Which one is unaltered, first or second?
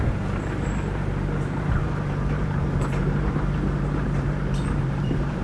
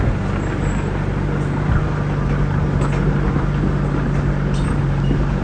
second